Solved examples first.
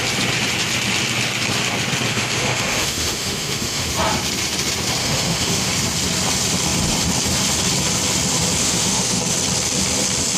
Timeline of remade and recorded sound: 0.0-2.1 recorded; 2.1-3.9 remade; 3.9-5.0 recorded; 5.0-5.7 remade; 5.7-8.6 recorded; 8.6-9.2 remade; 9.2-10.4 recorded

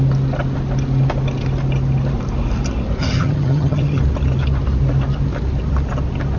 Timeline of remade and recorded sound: 0.0-3.0 recorded; 3.0-4.0 remade; 4.0-6.4 recorded

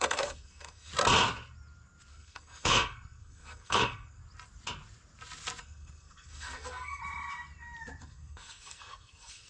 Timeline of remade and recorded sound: 0.0-0.9 remade; 0.9-2.1 recorded; 2.1-4.2 remade; 4.2-5.6 recorded; 5.6-7.0 remade; 7.0-8.0 recorded; 8.0-9.5 remade

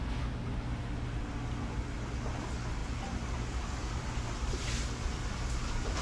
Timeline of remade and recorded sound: 0.0-6.0 recorded

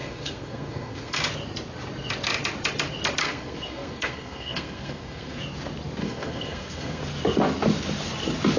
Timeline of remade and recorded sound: 0.0-1.2 remade; 1.2-3.2 recorded; 3.2-5.4 remade; 5.4-6.0 recorded; 6.0-7.0 remade; 7.0-8.6 recorded

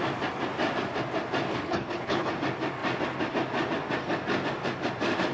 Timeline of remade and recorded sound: 0.0-1.5 recorded; 1.5-2.3 remade; 2.3-5.3 recorded